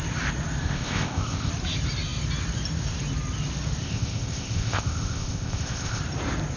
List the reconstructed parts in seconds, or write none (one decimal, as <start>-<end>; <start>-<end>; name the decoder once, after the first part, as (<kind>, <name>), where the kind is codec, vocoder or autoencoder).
0.6-1.5 (codec, ZipCodec); 3.8-6.0